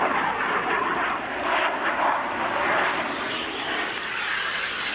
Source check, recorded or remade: recorded